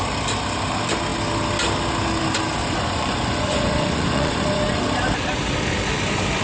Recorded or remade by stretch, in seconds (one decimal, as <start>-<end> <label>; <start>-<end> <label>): 0.0-2.6 recorded; 2.6-4.8 remade; 4.8-6.4 recorded

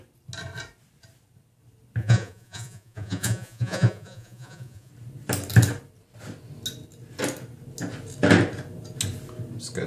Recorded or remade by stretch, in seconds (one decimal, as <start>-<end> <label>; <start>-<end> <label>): 0.0-2.0 recorded; 2.0-4.9 remade; 4.9-9.9 recorded

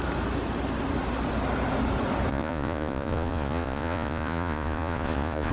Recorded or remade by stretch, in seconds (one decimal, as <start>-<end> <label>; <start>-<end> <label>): 0.0-2.3 recorded; 2.3-5.5 remade

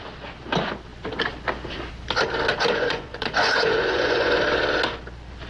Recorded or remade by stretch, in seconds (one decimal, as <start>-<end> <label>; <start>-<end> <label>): 0.0-2.5 recorded; 2.5-4.4 remade; 4.4-5.5 recorded

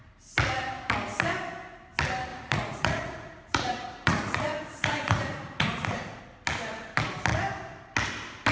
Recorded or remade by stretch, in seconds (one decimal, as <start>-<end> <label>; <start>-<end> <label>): 0.0-2.3 recorded; 2.3-6.2 remade; 6.2-8.5 recorded